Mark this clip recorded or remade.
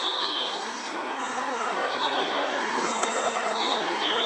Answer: remade